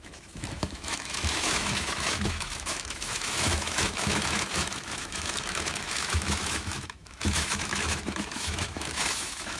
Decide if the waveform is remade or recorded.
remade